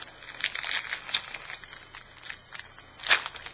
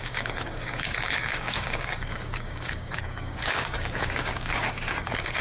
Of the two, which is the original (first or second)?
first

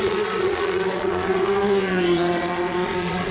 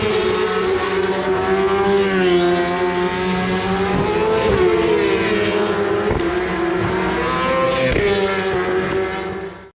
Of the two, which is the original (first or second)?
second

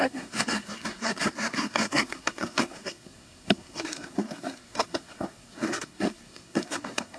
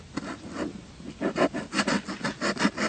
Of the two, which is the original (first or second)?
second